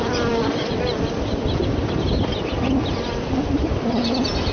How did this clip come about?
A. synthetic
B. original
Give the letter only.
B